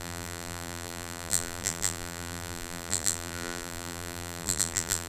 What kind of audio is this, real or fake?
fake